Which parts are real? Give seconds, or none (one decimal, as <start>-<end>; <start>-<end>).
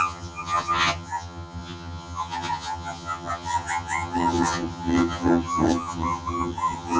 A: none